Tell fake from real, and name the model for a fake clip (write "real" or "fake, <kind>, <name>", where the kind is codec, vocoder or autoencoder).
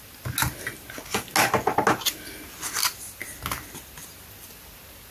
real